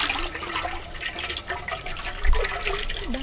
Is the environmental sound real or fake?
real